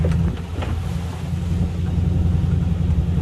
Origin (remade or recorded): recorded